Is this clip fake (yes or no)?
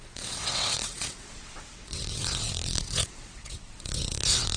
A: yes